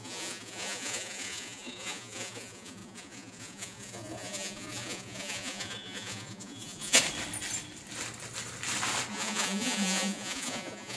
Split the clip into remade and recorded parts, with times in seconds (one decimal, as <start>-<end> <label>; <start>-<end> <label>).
0.0-7.0 remade; 7.0-9.1 recorded; 9.1-11.0 remade